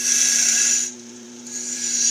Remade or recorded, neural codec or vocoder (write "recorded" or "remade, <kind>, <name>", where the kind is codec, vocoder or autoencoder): remade, vocoder, BigVGAN v2